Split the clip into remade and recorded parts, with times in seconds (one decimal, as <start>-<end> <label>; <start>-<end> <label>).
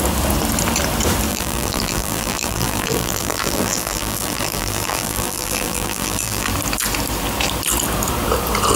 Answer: 0.0-1.3 recorded; 1.3-6.5 remade; 6.5-8.8 recorded